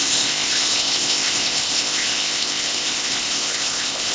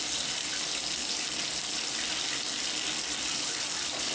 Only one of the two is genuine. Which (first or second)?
second